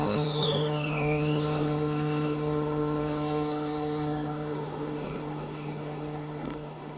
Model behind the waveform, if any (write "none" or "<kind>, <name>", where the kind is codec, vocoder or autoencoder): codec, SNAC